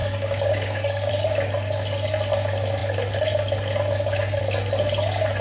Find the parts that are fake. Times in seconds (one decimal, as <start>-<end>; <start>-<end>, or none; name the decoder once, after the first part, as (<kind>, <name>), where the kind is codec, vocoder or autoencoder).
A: 0.0-1.1 (codec, DAC)